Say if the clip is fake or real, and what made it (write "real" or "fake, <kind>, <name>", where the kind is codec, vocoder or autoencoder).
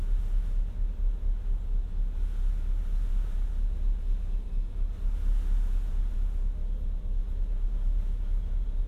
real